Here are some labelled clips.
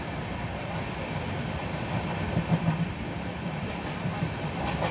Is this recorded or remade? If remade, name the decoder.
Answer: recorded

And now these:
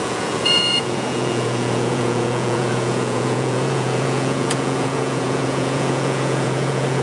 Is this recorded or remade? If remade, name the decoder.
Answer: remade, vocoder, Vocos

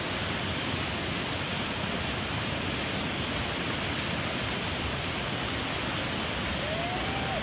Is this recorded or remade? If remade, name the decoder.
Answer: recorded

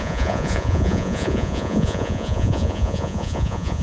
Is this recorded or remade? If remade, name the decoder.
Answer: remade, vocoder, Vocos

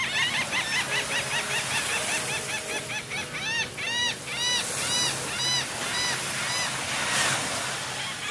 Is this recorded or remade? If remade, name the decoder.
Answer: recorded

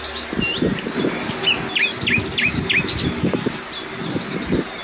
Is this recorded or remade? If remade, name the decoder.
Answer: recorded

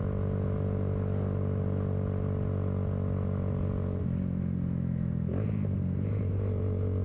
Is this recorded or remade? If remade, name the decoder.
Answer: recorded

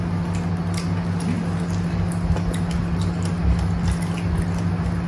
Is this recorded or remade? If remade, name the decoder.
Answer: recorded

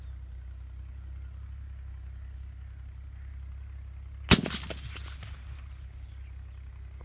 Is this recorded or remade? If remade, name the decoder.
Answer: recorded